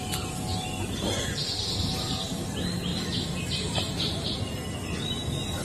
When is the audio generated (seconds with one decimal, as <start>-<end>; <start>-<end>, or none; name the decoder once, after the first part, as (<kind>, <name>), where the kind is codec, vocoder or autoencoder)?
2.9-4.4 (vocoder, BigVGAN v2)